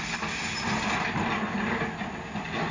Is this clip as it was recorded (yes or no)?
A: yes